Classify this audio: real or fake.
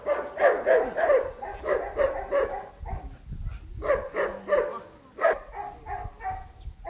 real